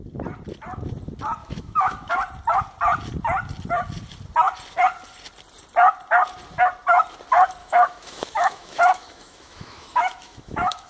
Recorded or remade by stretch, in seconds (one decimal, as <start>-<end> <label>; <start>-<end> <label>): 0.0-1.4 recorded; 1.4-2.1 remade; 2.1-7.6 recorded; 7.6-10.9 remade